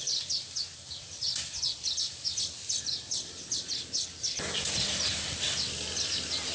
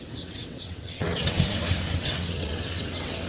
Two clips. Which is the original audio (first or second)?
first